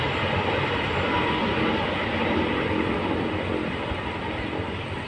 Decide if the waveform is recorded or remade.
recorded